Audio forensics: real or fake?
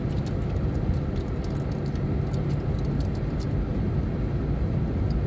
real